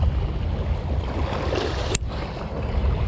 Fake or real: real